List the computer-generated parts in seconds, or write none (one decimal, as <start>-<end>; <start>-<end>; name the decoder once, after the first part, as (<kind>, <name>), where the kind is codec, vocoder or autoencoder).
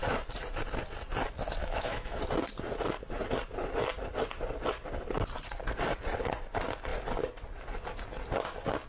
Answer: 1.6-2.2 (autoencoder, DAC-VAE)